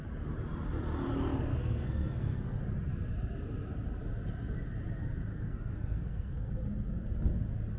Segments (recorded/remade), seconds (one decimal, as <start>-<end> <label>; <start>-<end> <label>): 0.0-1.5 recorded; 1.5-2.6 remade; 2.6-5.3 recorded; 5.3-6.5 remade; 6.5-7.8 recorded